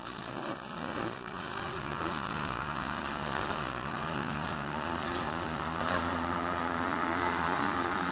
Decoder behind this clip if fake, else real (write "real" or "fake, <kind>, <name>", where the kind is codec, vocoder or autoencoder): fake, vocoder, Vocos